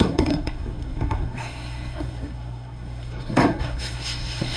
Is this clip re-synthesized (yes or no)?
yes